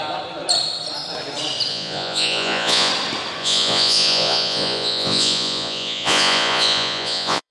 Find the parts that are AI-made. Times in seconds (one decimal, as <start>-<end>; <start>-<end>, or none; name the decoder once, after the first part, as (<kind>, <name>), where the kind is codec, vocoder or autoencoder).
1.7-2.9 (vocoder, Vocos); 3.4-7.5